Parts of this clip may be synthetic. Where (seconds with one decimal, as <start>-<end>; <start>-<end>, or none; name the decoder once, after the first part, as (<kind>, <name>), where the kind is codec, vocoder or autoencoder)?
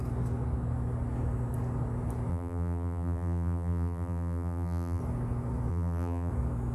2.3-5.0 (vocoder, BigVGAN v2); 5.7-6.3